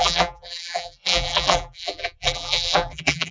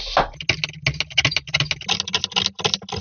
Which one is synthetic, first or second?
first